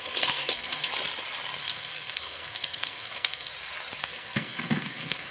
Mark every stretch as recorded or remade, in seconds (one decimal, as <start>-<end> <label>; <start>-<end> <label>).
0.0-0.9 remade; 0.9-1.6 recorded; 1.6-3.5 remade; 3.5-4.0 recorded; 4.0-5.3 remade